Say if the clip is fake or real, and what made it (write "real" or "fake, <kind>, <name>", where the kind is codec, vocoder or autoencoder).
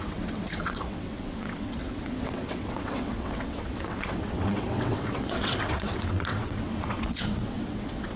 fake, vocoder, WaveNeXt